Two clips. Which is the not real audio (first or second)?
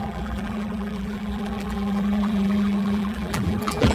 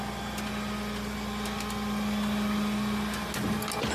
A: first